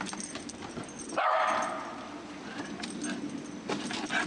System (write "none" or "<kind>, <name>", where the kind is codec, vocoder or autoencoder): none